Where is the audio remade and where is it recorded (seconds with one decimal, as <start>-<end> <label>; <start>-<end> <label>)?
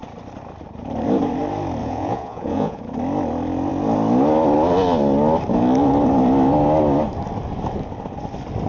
0.0-1.8 recorded; 1.8-2.8 remade; 2.8-8.7 recorded